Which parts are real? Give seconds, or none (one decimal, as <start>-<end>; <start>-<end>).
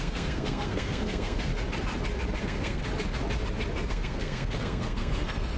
1.5-2.4; 2.8-3.9